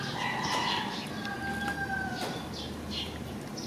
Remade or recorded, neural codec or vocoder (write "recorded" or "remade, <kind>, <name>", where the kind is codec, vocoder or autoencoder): recorded